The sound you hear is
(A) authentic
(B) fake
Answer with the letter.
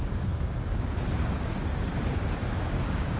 B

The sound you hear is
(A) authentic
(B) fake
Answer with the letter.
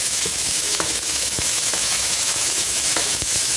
B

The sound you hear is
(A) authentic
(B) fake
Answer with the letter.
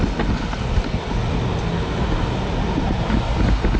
A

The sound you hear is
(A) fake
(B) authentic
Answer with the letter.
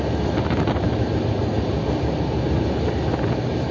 B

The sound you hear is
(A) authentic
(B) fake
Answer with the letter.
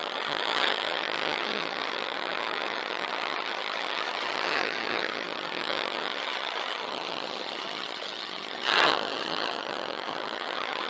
B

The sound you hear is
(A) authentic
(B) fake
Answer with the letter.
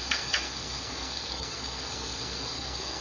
B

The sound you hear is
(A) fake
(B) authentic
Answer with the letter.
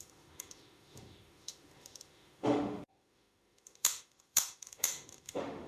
A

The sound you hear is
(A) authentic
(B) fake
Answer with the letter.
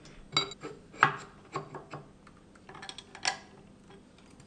A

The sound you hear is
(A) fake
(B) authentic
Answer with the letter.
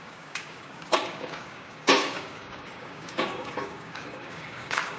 A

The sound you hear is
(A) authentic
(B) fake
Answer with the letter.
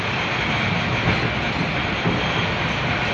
A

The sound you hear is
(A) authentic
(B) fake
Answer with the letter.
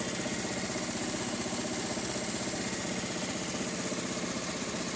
A